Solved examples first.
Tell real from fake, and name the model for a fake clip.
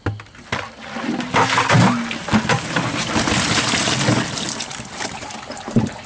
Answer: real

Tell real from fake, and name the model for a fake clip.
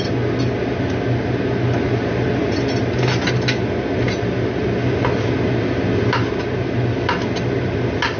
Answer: real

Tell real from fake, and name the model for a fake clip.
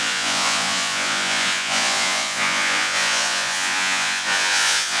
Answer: fake, vocoder, Vocos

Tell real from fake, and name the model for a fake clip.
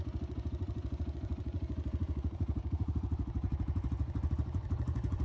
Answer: fake, vocoder, Vocos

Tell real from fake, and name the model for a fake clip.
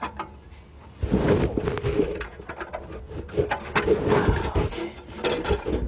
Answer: real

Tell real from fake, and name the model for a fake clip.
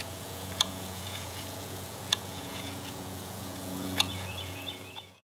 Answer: fake, vocoder, Vocos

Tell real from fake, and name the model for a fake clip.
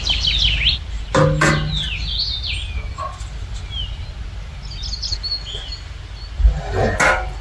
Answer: real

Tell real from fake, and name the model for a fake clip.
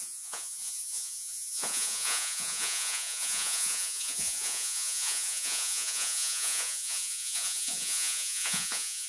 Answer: fake, vocoder, Vocos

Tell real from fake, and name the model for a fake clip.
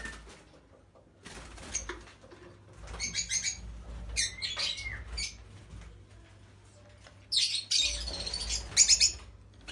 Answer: real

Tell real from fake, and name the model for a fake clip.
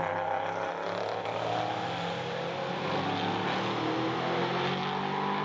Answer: real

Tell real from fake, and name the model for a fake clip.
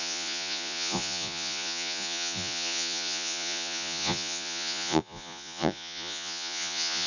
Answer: fake, vocoder, Vocos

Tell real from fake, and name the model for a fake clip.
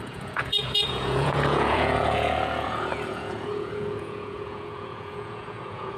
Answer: fake, vocoder, Vocos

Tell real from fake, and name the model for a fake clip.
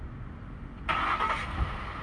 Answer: real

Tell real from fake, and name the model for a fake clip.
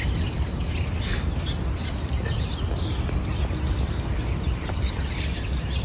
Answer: real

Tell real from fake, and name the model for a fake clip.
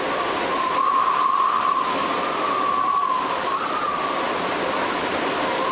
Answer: real